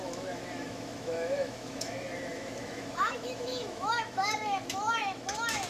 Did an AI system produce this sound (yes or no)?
yes